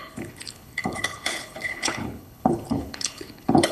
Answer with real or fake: fake